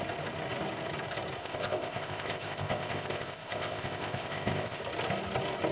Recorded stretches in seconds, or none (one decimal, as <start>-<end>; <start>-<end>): 0.0-1.4; 4.8-5.7